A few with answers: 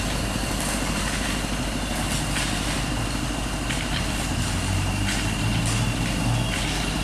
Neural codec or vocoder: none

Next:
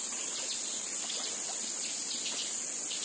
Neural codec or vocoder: none